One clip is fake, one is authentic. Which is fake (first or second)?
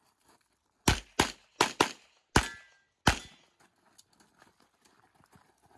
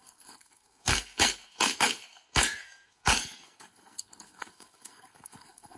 second